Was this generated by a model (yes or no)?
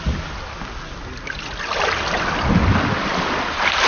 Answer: no